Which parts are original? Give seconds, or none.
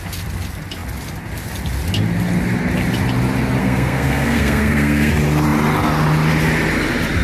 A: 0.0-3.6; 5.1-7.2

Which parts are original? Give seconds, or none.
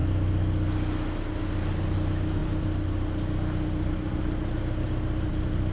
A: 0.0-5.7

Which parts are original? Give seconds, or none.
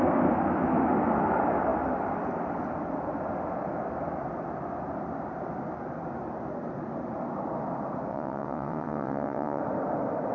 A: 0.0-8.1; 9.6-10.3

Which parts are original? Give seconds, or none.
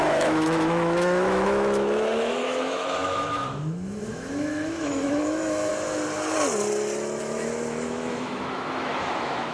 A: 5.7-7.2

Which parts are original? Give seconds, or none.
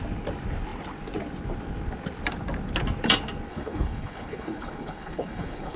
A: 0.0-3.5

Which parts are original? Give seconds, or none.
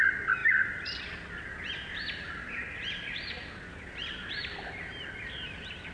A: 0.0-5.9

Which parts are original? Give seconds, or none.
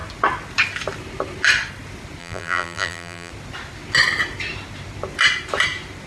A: 0.0-2.2; 3.3-6.1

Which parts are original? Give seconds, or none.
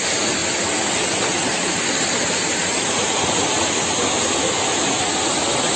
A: 0.0-5.8